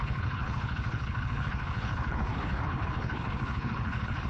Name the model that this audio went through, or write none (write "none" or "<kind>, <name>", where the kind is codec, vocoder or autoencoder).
codec, HILCodec